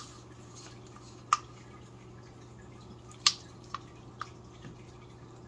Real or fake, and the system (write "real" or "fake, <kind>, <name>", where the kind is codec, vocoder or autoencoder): real